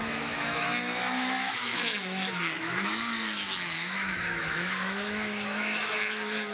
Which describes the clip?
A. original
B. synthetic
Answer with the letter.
B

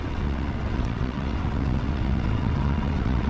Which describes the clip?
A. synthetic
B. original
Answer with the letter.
A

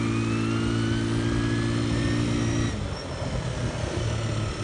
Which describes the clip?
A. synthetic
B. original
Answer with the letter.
B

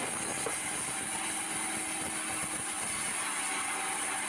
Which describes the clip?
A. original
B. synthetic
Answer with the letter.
A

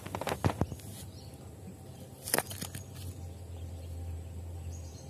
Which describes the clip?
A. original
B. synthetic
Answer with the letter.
A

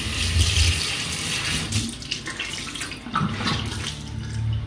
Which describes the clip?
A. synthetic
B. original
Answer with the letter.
B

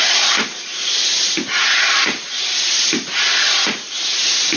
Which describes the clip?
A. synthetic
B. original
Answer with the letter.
B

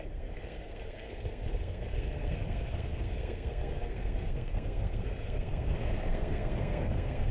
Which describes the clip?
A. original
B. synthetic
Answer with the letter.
B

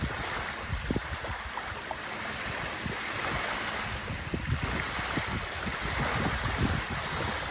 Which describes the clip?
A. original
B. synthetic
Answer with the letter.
A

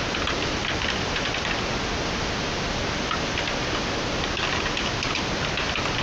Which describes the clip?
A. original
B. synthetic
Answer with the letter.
A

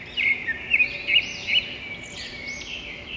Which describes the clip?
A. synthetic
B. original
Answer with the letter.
B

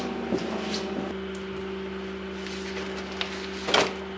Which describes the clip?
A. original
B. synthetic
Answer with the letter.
A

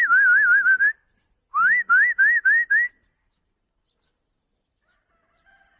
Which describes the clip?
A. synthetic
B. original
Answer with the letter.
B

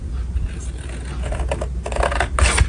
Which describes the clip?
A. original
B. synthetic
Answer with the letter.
A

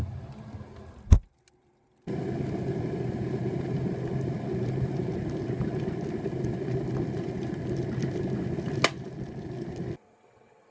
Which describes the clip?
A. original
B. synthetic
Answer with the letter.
A